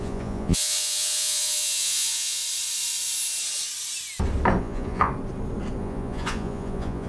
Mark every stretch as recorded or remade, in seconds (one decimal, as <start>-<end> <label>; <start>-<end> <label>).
0.0-2.4 remade; 2.4-4.6 recorded; 4.6-5.1 remade; 5.1-5.8 recorded; 5.8-7.1 remade